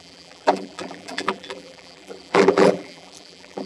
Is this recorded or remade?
remade